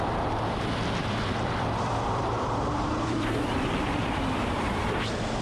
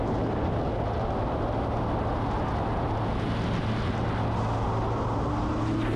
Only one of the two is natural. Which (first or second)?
second